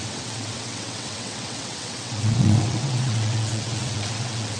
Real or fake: fake